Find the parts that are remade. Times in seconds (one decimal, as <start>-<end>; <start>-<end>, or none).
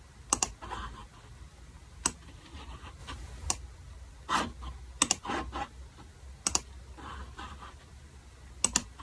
none